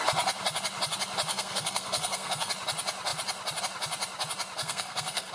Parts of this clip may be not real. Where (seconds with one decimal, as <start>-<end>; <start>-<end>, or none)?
1.3-2.5; 4.6-5.3